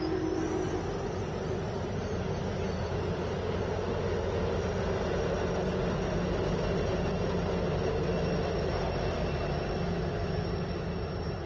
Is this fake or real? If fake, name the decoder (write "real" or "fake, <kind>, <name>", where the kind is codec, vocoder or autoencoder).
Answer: real